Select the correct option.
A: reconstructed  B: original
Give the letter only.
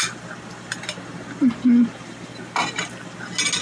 B